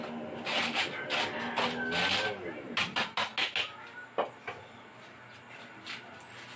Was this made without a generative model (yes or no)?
yes